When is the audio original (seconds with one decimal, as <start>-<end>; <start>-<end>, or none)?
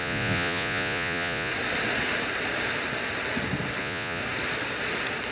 1.5-3.8; 4.2-5.3